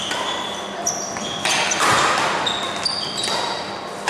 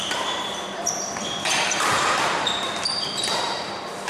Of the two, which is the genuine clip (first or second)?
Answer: first